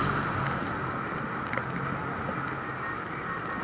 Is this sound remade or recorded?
recorded